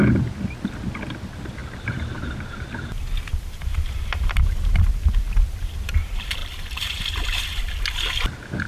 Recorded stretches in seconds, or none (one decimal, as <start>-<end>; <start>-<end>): 0.0-1.6; 2.9-3.7; 4.9-6.4; 7.6-8.7